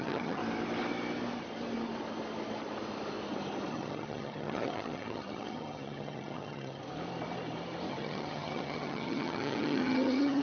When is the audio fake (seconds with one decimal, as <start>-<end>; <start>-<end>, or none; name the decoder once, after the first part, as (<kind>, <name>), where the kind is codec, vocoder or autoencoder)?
0.0-0.4 (vocoder, HiFi-GAN); 3.7-6.8; 7.9-10.4